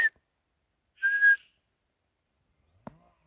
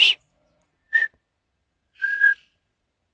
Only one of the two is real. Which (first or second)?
first